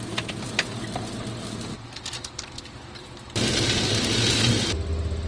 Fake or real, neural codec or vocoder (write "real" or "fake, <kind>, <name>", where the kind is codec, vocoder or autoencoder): real